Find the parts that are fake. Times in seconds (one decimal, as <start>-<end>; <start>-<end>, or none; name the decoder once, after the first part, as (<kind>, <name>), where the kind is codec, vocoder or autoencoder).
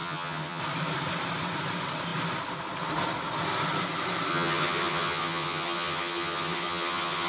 0.0-0.6 (vocoder, HiFi-GAN); 4.3-7.3